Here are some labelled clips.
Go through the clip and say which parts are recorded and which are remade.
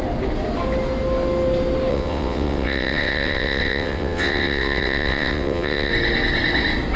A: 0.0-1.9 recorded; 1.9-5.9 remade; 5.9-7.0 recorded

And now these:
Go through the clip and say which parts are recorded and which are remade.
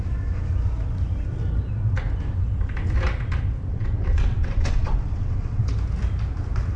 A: 0.0-3.7 recorded; 3.7-5.6 remade; 5.6-6.8 recorded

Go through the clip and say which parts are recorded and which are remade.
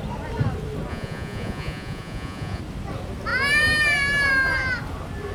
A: 0.0-0.9 recorded; 0.9-2.6 remade; 2.6-5.3 recorded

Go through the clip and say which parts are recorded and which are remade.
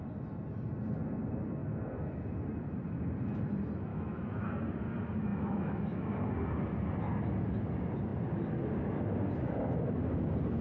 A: 0.0-3.9 recorded; 3.9-4.5 remade; 4.5-5.3 recorded; 5.3-6.1 remade; 6.1-10.6 recorded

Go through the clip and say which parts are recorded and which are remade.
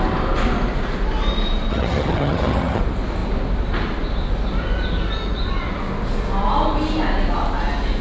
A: 0.0-1.7 recorded; 1.7-2.8 remade; 2.8-8.0 recorded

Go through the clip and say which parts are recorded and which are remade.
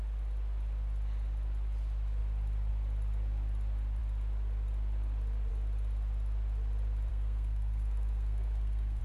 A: 0.0-7.1 recorded; 7.1-9.0 remade